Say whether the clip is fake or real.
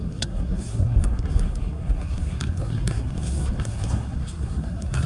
fake